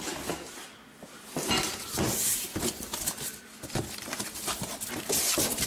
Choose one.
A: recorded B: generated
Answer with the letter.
A